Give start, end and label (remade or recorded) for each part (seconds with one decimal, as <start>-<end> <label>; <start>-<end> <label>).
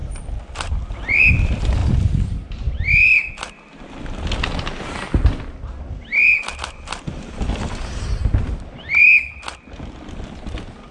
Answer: 0.0-1.3 remade; 1.3-1.8 recorded; 1.8-3.3 remade; 3.3-10.9 recorded